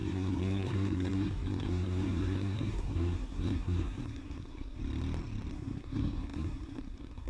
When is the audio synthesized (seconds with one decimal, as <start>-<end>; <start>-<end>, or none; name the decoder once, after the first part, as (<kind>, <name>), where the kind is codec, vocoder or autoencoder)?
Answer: 0.0-4.8 (codec, SNAC); 5.5-7.3